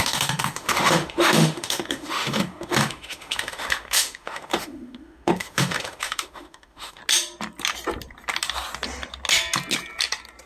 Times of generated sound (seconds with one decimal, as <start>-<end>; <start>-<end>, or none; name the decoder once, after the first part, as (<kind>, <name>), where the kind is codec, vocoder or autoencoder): 0.0-7.0 (autoencoder, DAC-VAE)